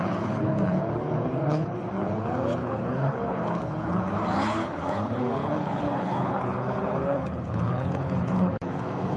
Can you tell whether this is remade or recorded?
remade